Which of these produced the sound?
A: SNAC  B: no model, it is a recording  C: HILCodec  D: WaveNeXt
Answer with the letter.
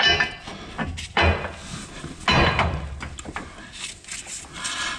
B